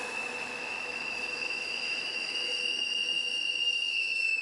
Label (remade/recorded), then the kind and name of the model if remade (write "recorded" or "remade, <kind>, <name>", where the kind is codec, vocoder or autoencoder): remade, autoencoder, DAC-VAE